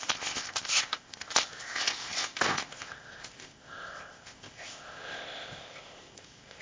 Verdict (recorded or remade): remade